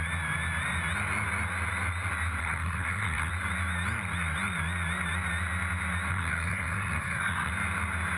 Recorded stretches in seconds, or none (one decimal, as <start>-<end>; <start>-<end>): 0.0-2.4; 3.3-6.1; 7.5-8.2